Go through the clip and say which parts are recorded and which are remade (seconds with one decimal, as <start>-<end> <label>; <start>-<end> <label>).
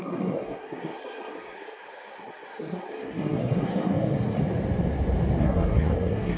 0.0-4.4 remade; 4.4-5.4 recorded; 5.4-6.4 remade